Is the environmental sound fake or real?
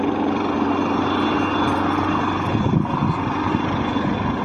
real